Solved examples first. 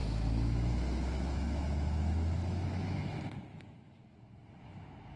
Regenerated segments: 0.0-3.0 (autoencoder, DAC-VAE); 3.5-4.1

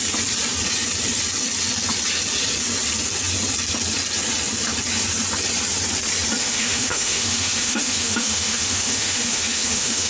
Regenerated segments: 6.4-10.1 (autoencoder, DAC-VAE)

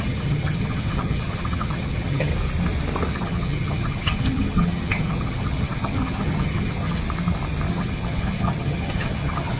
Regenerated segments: 0.0-2.3 (vocoder, HiFi-GAN); 3.1-7.0; 7.7-9.6

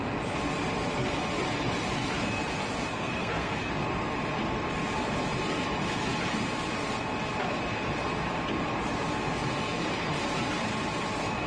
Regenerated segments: 2.9-3.6 (codec, SNAC)